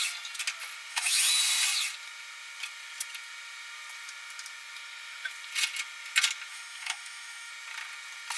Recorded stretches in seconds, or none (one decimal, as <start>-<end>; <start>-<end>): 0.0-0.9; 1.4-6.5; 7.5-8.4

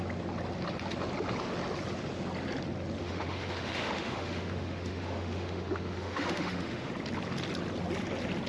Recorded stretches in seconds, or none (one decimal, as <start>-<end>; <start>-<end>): 0.0-3.0; 6.9-8.5

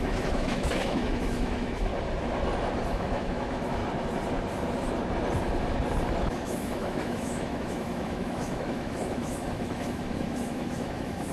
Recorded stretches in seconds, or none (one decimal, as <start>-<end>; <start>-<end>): 1.9-2.9; 3.8-6.2